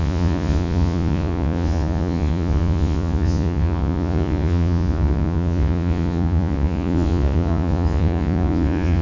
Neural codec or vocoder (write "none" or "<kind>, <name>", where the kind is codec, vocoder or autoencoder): vocoder, Vocos